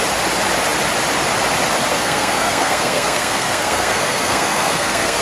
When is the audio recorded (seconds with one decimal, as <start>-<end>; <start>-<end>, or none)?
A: 0.0-1.9